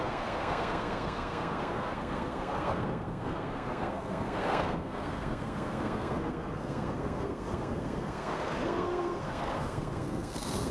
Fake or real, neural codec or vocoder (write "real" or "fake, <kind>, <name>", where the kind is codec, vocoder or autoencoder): fake, codec, SNAC